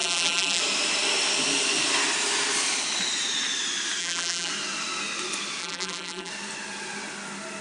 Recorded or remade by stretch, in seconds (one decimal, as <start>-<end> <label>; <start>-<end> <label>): 0.0-0.6 remade; 0.6-4.0 recorded; 4.0-4.5 remade; 4.5-5.6 recorded; 5.6-6.3 remade; 6.3-7.6 recorded